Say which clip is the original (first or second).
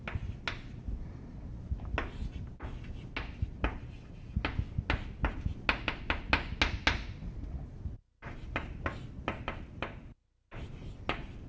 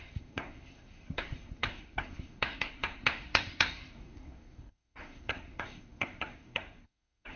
first